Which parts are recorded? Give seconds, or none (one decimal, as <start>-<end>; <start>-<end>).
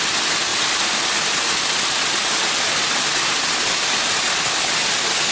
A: 0.0-5.3